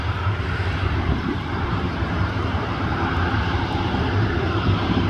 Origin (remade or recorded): remade